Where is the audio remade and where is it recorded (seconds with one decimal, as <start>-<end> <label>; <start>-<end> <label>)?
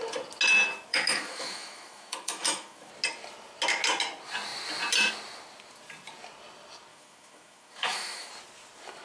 0.0-0.9 recorded; 0.9-2.9 remade; 2.9-6.9 recorded; 6.9-8.3 remade; 8.3-9.0 recorded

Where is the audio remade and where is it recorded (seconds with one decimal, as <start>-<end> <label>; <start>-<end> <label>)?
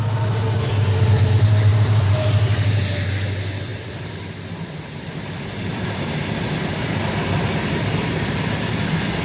0.0-1.7 recorded; 1.7-3.1 remade; 3.1-3.7 recorded; 3.7-5.7 remade; 5.7-9.2 recorded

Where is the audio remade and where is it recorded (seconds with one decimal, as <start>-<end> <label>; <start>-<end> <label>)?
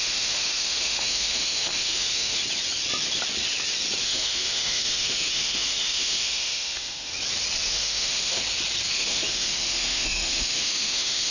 0.0-2.4 remade; 2.4-4.0 recorded; 4.0-7.1 remade; 7.1-7.7 recorded; 7.7-8.4 remade; 8.4-8.9 recorded; 8.9-11.3 remade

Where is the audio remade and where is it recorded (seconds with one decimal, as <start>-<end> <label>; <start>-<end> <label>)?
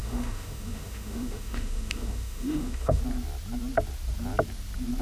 0.0-3.0 remade; 3.0-5.0 recorded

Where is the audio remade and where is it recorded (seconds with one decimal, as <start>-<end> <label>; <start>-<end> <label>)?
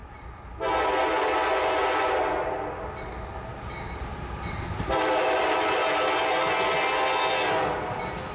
0.0-8.3 recorded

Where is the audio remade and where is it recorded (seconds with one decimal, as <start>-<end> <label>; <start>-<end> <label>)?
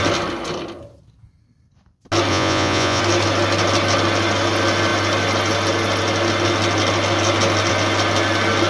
0.0-2.3 recorded; 2.3-3.0 remade; 3.0-8.7 recorded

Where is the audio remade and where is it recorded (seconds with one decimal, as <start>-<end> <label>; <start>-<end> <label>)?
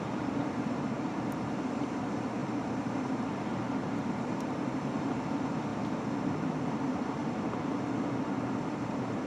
0.0-5.7 remade; 5.7-6.2 recorded; 6.2-7.2 remade; 7.2-8.6 recorded; 8.6-9.3 remade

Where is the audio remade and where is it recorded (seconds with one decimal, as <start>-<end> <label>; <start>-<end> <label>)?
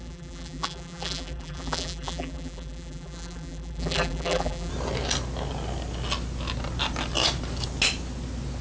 0.0-4.7 remade; 4.7-8.6 recorded